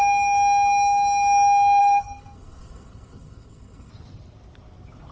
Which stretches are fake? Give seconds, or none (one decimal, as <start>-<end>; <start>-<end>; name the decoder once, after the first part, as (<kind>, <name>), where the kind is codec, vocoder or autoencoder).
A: 1.8-3.9 (codec, SNAC)